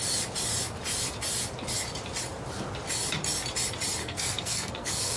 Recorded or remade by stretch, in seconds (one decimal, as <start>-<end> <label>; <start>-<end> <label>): 0.0-4.0 recorded; 4.0-5.2 remade